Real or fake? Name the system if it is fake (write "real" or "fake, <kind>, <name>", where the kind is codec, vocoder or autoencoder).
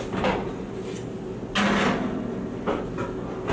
real